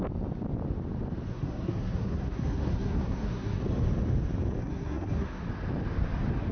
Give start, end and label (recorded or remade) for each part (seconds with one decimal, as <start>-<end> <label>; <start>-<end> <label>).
0.0-1.3 recorded; 1.3-3.6 remade; 3.6-4.6 recorded; 4.6-5.4 remade; 5.4-6.5 recorded